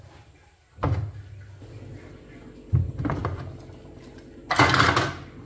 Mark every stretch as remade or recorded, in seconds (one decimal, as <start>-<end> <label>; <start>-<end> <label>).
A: 0.0-5.5 recorded